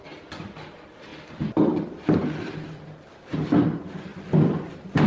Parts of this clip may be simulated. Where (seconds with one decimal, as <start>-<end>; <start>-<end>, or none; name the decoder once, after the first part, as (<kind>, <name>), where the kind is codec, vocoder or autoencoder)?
none